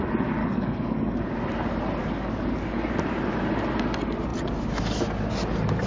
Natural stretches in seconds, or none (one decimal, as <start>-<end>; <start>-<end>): 0.0-0.4; 1.2-2.0; 2.9-5.9